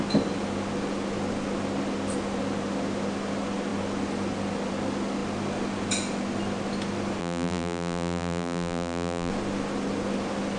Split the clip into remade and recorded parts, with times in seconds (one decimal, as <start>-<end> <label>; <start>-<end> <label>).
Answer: 0.0-7.2 recorded; 7.2-9.3 remade; 9.3-10.6 recorded